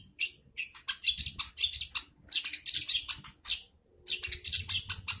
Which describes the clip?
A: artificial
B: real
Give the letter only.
B